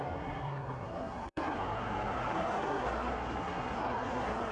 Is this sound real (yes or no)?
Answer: no